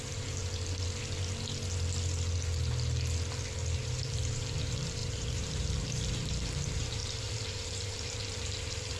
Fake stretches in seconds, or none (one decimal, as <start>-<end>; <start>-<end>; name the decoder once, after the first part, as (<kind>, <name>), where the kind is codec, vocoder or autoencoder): 0.0-0.4 (vocoder, BigVGAN v2); 3.8-9.0